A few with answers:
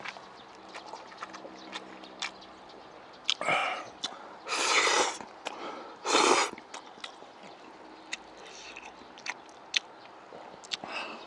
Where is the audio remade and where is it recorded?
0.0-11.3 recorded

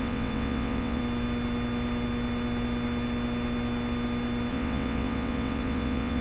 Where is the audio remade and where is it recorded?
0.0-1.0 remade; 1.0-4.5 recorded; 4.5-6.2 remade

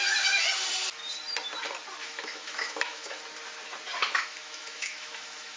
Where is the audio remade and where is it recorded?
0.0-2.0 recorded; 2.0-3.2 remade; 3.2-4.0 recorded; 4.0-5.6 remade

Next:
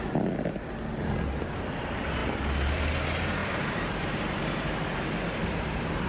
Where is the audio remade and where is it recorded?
0.0-2.2 recorded; 2.2-2.9 remade; 2.9-3.4 recorded; 3.4-5.1 remade; 5.1-6.1 recorded